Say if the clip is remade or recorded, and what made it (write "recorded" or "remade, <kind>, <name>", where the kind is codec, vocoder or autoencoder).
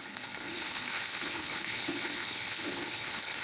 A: remade, codec, HILCodec